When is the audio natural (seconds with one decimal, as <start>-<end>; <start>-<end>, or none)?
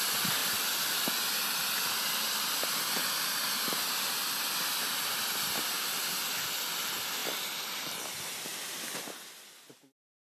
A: 0.0-0.4; 3.1-7.2; 8.1-10.3